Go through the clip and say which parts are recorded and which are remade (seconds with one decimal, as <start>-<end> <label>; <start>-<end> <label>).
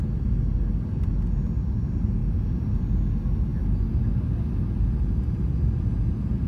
0.0-6.5 recorded